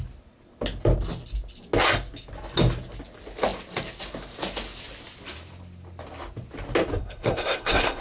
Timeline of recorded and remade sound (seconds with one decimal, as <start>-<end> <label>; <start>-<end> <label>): 0.0-6.9 recorded; 6.9-8.0 remade

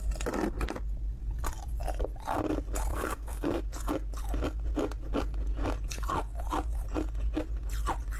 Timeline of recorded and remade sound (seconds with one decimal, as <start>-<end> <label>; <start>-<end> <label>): 0.0-2.9 recorded; 2.9-3.6 remade; 3.6-8.2 recorded

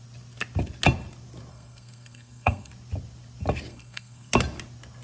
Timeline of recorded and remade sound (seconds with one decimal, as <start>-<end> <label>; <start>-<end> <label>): 0.0-1.5 recorded; 1.5-2.7 remade; 2.7-3.7 recorded; 3.7-4.3 remade; 4.3-5.0 recorded

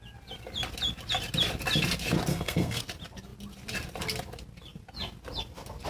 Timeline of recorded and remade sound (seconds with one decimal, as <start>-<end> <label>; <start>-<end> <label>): 0.0-2.3 recorded; 2.3-2.8 remade; 2.8-5.9 recorded

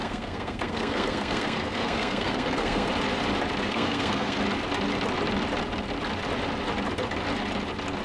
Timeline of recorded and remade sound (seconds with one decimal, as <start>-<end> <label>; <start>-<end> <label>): 0.0-2.9 remade; 2.9-3.7 recorded; 3.7-4.4 remade; 4.4-8.0 recorded